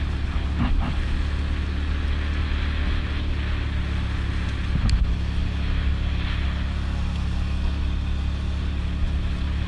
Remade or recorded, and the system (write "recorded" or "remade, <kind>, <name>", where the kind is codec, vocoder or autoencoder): recorded